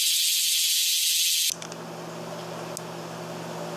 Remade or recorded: recorded